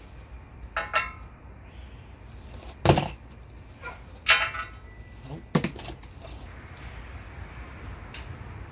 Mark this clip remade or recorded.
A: recorded